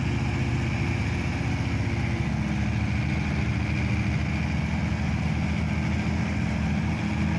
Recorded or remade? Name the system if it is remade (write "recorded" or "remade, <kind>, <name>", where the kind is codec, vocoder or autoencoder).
recorded